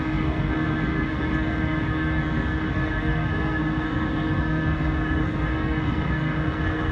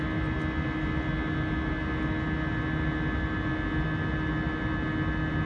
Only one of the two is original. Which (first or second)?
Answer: second